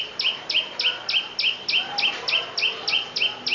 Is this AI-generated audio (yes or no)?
no